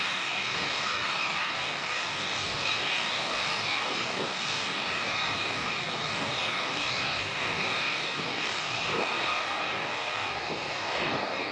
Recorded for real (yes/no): no